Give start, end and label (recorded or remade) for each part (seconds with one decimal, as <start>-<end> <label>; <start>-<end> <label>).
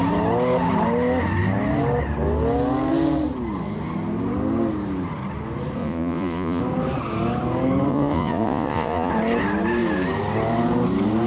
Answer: 0.0-5.8 recorded; 5.8-6.6 remade; 6.6-7.9 recorded; 7.9-9.1 remade; 9.1-11.3 recorded